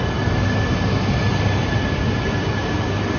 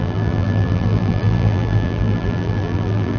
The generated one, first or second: second